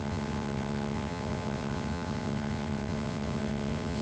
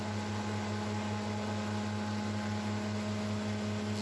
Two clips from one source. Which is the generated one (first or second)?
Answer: first